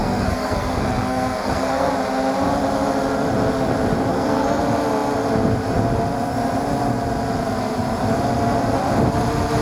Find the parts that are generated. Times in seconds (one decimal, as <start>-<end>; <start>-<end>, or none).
0.0-1.9; 4.1-4.6